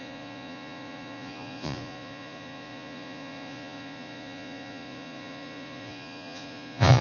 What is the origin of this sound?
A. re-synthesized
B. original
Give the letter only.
A